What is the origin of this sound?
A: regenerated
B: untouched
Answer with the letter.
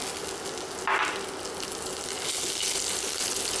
B